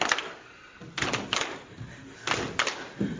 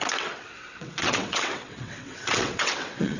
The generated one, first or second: second